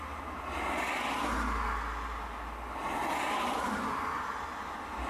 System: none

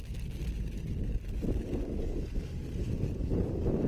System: none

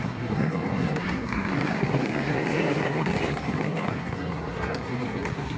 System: codec, SNAC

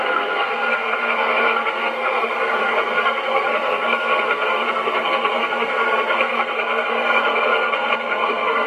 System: codec, SNAC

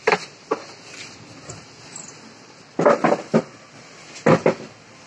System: none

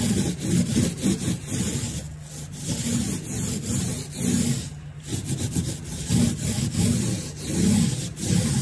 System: none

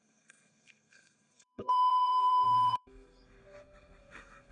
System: codec, SNAC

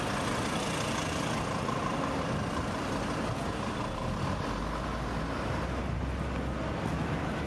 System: none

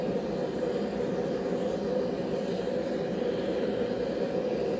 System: none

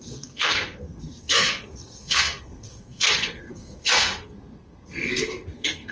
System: codec, SNAC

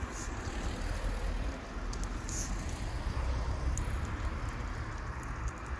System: none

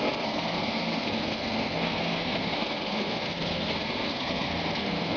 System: codec, SNAC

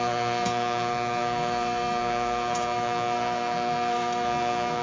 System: codec, SNAC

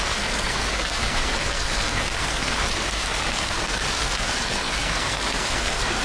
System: codec, SNAC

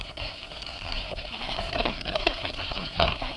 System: codec, SNAC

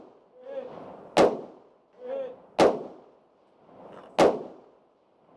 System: none